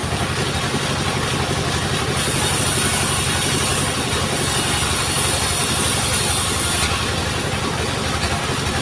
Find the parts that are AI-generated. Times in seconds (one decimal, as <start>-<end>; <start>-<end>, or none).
none